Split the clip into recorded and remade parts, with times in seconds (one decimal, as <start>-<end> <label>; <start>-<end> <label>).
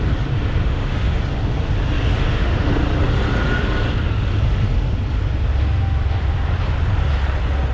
0.0-0.6 recorded; 0.6-1.2 remade; 1.2-2.1 recorded; 2.1-2.7 remade; 2.7-7.7 recorded